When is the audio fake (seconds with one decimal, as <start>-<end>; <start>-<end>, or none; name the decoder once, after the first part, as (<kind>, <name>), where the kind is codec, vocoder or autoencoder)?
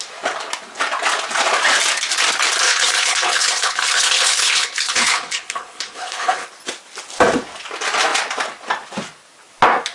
2.6-6.5 (codec, HILCodec)